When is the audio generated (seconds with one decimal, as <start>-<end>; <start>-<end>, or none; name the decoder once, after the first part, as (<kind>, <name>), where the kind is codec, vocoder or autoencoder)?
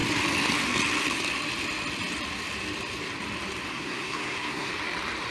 3.7-4.7 (codec, SNAC)